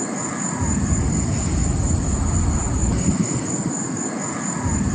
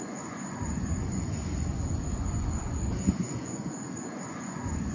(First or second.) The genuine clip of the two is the first